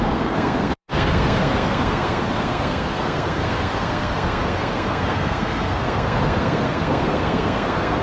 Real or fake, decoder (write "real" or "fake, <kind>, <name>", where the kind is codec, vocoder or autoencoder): fake, codec, SNAC